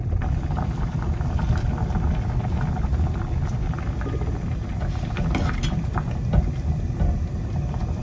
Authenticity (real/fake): real